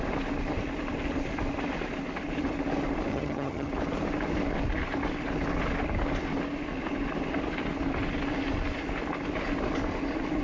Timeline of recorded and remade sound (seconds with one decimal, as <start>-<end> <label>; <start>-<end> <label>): 0.0-3.1 recorded; 3.1-3.7 remade; 3.7-10.4 recorded